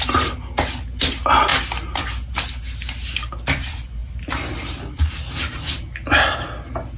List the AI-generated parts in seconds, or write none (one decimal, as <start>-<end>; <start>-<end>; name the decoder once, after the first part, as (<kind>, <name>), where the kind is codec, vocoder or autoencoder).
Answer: none